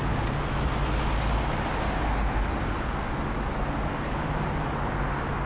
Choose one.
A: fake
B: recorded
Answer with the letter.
B